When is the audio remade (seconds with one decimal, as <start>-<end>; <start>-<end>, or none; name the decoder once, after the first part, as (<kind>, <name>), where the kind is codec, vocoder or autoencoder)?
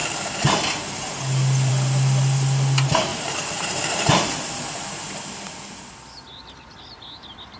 3.1-4.1 (vocoder, BigVGAN v2)